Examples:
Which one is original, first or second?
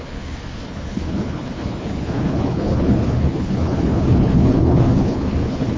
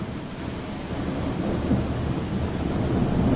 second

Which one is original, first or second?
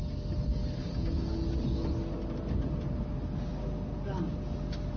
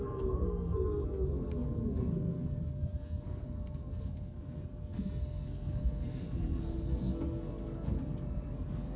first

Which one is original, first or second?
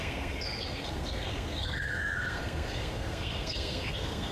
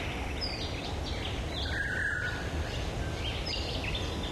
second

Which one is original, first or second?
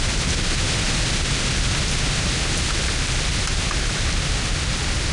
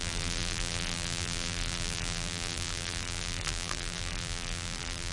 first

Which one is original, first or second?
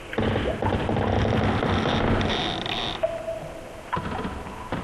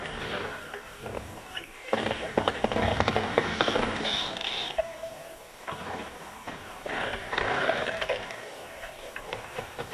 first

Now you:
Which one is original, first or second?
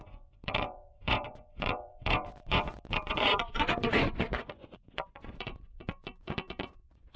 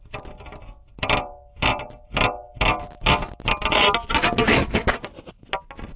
second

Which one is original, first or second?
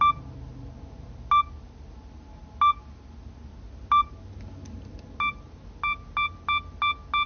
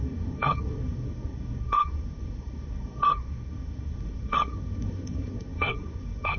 first